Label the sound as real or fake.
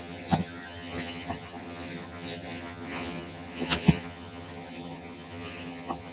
fake